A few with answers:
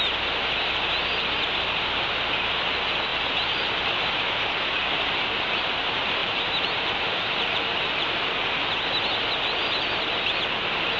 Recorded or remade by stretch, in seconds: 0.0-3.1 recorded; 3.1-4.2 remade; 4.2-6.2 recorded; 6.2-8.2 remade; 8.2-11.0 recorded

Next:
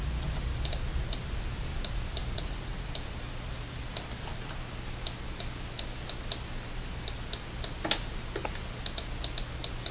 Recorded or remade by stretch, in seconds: 0.0-9.9 recorded

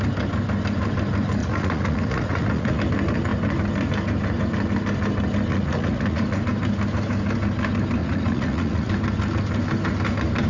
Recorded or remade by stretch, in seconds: 0.0-1.4 recorded; 1.4-2.8 remade; 2.8-5.5 recorded; 5.5-6.4 remade; 6.4-8.0 recorded; 8.0-8.9 remade; 8.9-10.5 recorded

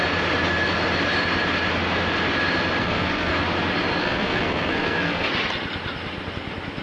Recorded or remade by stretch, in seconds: 0.0-2.8 recorded; 2.8-3.3 remade; 3.3-4.0 recorded; 4.0-5.3 remade; 5.3-6.8 recorded

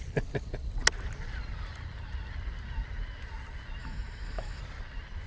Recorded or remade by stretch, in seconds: 0.0-3.8 recorded; 3.8-4.6 remade; 4.6-5.3 recorded

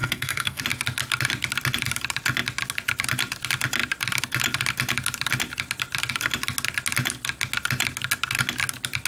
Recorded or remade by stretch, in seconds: 0.0-0.6 remade; 0.6-9.1 recorded

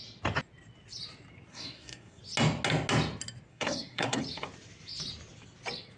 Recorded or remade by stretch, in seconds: 0.0-1.5 recorded; 1.5-2.2 remade; 2.2-3.5 recorded; 3.5-4.2 remade; 4.2-6.0 recorded

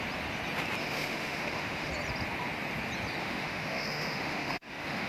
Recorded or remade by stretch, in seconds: 0.0-0.8 recorded; 0.8-1.9 remade; 1.9-3.2 recorded; 3.2-5.1 remade